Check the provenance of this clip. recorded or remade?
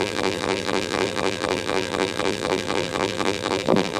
remade